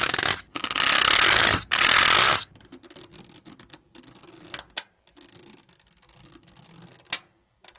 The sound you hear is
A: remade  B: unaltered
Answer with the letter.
B